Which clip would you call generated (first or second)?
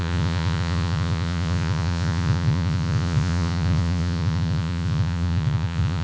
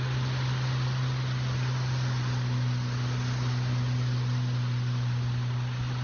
first